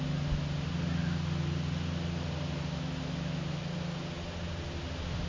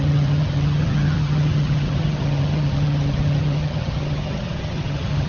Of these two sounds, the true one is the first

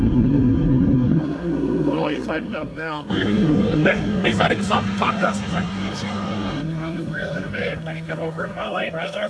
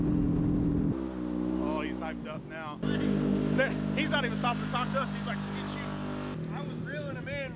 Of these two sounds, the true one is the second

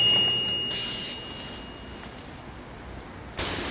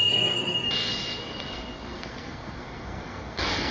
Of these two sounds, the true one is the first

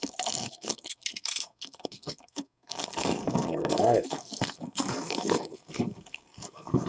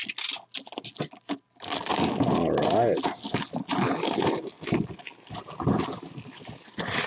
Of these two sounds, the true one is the second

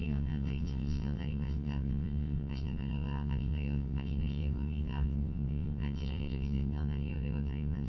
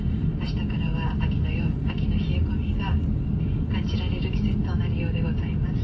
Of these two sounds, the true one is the second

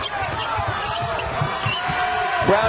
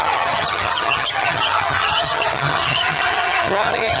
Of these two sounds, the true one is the first